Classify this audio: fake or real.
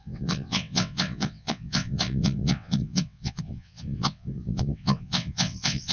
fake